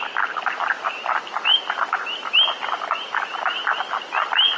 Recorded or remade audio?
recorded